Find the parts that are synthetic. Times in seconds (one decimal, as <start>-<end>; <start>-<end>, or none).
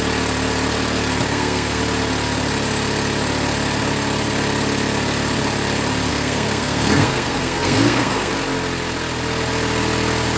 1.3-1.8; 6.1-8.3